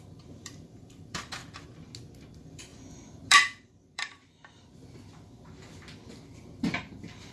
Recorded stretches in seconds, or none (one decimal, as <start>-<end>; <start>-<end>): 1.4-2.3; 2.7-3.3; 4.2-6.8